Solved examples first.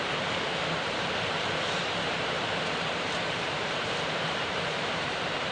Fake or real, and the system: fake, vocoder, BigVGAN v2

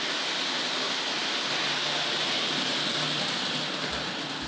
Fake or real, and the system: real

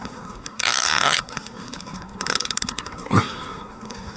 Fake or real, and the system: fake, codec, SNAC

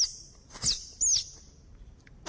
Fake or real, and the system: real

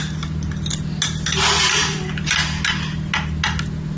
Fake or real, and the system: real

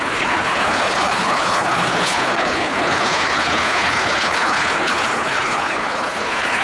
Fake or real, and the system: fake, codec, HILCodec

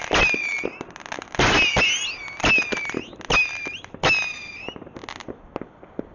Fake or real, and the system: real